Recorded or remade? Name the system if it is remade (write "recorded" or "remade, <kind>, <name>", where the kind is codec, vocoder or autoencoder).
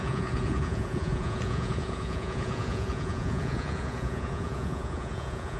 remade, vocoder, Vocos